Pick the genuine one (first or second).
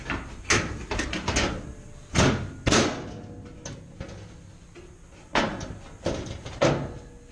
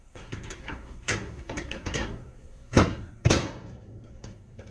first